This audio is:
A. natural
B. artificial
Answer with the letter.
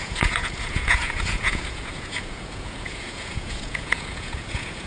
B